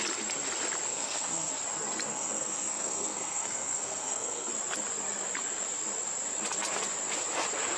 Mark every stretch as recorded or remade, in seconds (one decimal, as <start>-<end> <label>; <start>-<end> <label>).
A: 0.0-0.9 recorded; 0.9-1.5 remade; 1.5-2.1 recorded; 2.1-4.5 remade; 4.5-7.8 recorded

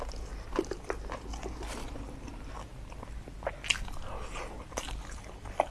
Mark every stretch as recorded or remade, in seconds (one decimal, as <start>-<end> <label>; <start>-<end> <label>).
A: 0.0-5.7 recorded

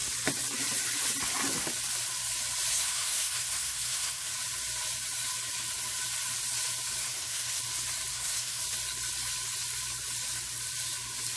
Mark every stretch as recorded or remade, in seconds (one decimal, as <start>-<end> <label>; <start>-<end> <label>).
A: 0.0-2.7 recorded; 2.7-4.3 remade; 4.3-7.0 recorded; 7.0-7.6 remade; 7.6-8.1 recorded; 8.1-8.6 remade; 8.6-11.4 recorded

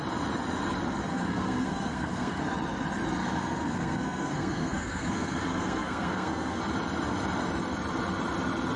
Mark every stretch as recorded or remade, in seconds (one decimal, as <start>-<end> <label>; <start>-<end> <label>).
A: 0.0-1.1 recorded; 1.1-2.4 remade; 2.4-3.2 recorded; 3.2-6.6 remade; 6.6-8.8 recorded

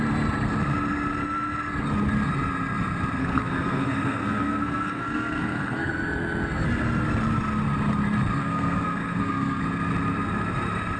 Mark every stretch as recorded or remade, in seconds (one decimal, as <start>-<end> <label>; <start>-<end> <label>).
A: 0.0-3.2 recorded; 3.2-5.9 remade; 5.9-8.4 recorded; 8.4-9.6 remade; 9.6-11.0 recorded

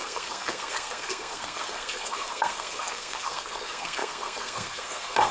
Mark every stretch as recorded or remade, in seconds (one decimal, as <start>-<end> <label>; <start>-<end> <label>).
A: 0.0-5.3 remade

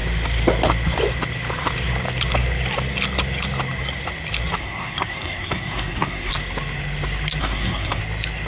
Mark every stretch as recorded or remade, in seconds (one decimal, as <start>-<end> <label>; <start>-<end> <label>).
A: 0.0-4.6 recorded; 4.6-6.3 remade; 6.3-7.4 recorded; 7.4-8.0 remade; 8.0-8.5 recorded

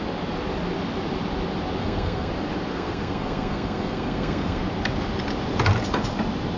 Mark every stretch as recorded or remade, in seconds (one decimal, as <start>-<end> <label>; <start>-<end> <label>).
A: 0.0-1.8 recorded; 1.8-2.3 remade; 2.3-2.7 recorded; 2.7-4.6 remade; 4.6-6.6 recorded